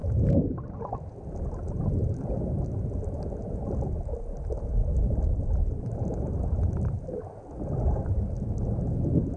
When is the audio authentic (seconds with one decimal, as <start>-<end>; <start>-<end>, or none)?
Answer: 0.0-4.8; 7.2-9.4